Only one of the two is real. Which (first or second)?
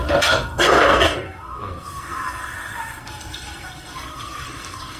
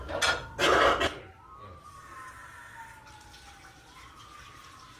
second